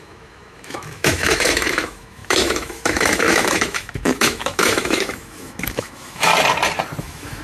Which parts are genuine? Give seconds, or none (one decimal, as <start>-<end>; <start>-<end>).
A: 6.3-7.0